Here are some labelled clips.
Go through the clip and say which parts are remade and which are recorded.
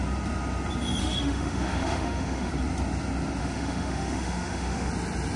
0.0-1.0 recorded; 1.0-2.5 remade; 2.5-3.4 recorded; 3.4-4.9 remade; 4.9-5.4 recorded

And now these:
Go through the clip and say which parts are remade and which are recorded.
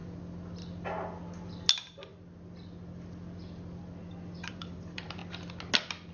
0.0-1.7 recorded; 1.7-2.1 remade; 2.1-4.5 recorded; 4.5-5.2 remade; 5.2-6.1 recorded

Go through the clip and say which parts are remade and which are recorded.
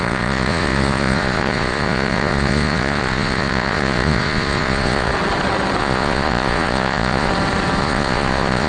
0.0-5.1 remade; 5.1-5.8 recorded; 5.8-7.3 remade; 7.3-7.8 recorded; 7.8-8.7 remade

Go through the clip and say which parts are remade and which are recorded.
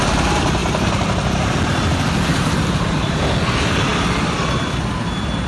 0.0-0.6 recorded; 0.6-1.5 remade; 1.5-2.3 recorded; 2.3-3.2 remade; 3.2-5.5 recorded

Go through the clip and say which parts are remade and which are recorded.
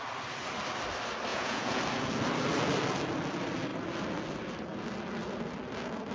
0.0-1.3 recorded; 1.3-1.8 remade; 1.8-6.1 recorded